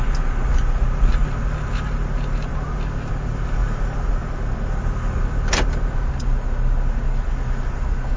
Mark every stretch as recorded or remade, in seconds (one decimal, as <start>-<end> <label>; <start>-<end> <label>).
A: 0.0-8.2 recorded